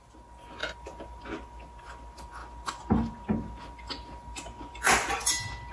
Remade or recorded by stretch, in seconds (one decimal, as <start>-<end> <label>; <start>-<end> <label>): 0.0-0.6 recorded; 0.6-1.2 remade; 1.2-5.7 recorded